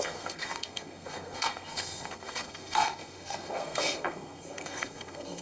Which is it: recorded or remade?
remade